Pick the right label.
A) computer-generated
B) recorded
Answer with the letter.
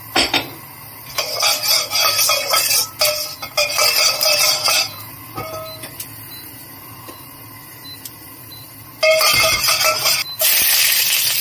B